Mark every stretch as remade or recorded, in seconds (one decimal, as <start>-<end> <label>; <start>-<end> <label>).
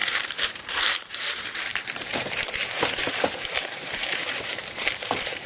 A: 0.0-5.5 remade